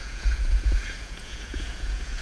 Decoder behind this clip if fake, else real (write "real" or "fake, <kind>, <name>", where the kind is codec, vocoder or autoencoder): fake, vocoder, Vocos